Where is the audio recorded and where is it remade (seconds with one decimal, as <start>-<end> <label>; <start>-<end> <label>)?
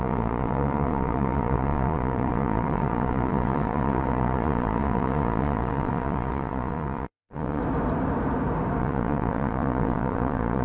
0.0-7.6 remade; 7.6-8.8 recorded; 8.8-10.6 remade